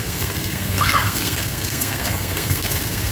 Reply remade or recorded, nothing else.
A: remade